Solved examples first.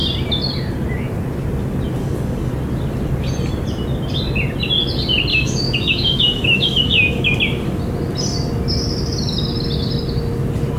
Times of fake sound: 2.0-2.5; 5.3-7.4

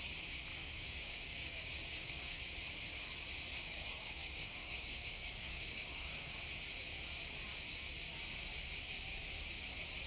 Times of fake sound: 0.5-2.4; 3.5-6.4

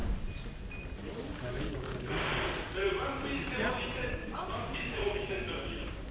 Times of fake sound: 1.5-2.3; 4.1-6.1